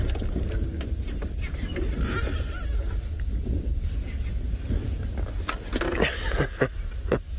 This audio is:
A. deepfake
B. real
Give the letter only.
B